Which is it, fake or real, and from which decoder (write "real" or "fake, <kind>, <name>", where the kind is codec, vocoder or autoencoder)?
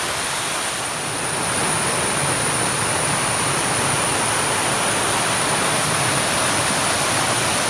real